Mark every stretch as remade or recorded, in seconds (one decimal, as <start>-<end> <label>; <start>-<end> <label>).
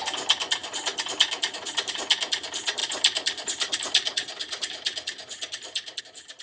0.0-2.8 recorded; 2.8-6.0 remade; 6.0-6.4 recorded